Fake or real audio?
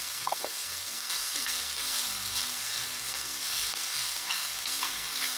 fake